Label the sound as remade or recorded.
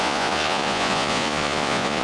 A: remade